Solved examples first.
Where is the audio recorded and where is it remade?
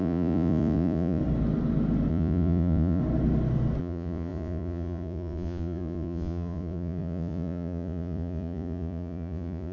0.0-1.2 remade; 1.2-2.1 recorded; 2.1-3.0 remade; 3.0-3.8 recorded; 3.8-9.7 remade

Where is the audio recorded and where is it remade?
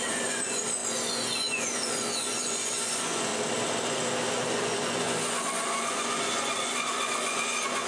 0.0-3.3 remade; 3.3-4.3 recorded; 4.3-7.9 remade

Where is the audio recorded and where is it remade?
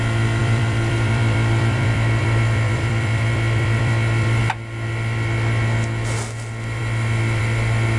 0.0-0.4 recorded; 0.4-4.4 remade; 4.4-8.0 recorded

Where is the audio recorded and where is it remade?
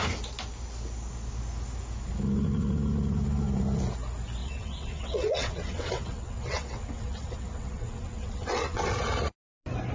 0.0-4.4 recorded; 4.4-8.9 remade; 8.9-9.9 recorded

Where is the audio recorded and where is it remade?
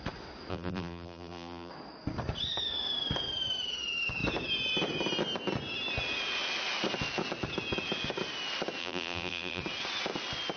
0.0-0.5 recorded; 0.5-1.7 remade; 1.7-8.8 recorded; 8.8-9.6 remade; 9.6-10.6 recorded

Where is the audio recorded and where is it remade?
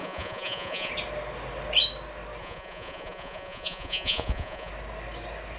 0.0-0.9 remade; 0.9-2.4 recorded; 2.4-4.7 remade; 4.7-5.6 recorded